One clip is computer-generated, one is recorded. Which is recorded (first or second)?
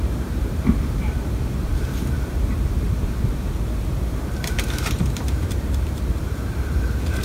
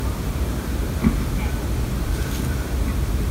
second